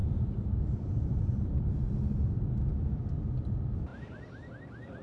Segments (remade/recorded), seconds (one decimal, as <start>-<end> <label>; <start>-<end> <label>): 0.0-3.0 remade; 3.0-3.9 recorded; 3.9-4.5 remade; 4.5-5.0 recorded